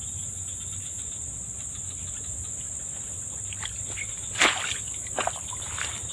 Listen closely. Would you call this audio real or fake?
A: real